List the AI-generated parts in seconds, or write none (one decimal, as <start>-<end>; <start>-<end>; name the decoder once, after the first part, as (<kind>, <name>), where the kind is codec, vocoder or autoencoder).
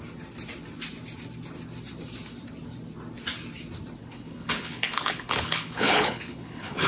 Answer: 4.0-6.9 (codec, HILCodec)